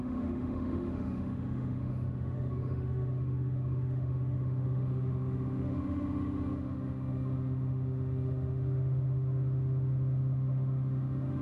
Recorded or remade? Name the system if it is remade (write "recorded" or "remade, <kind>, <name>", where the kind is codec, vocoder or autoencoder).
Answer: remade, autoencoder, DAC-VAE